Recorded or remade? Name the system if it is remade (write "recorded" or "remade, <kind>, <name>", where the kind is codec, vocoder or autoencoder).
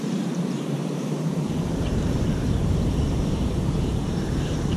remade, vocoder, BigVGAN v2